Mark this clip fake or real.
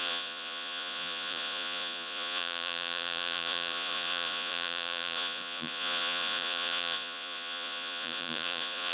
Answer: fake